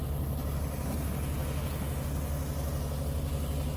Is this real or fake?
real